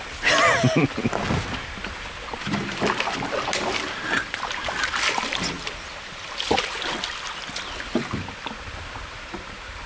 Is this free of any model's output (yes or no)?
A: yes